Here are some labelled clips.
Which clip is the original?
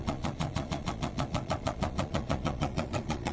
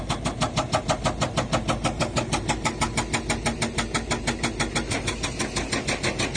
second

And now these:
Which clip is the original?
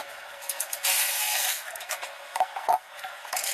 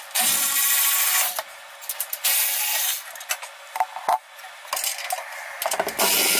second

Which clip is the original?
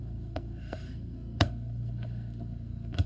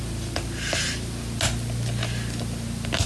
second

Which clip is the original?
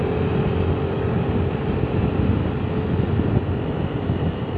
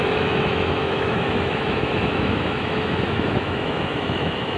first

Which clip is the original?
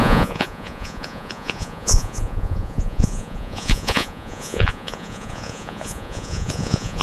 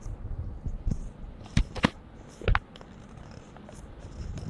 second